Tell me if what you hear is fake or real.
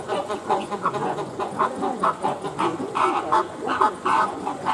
fake